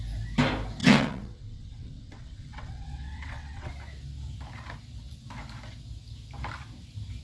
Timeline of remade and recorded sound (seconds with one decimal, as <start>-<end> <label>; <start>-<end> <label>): 0.0-0.8 recorded; 0.8-3.7 remade; 3.7-7.2 recorded